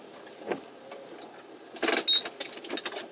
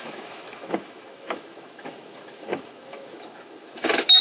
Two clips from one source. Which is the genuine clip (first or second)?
first